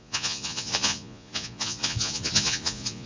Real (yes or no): no